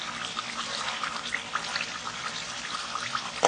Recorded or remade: recorded